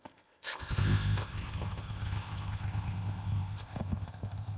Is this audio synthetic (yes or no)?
yes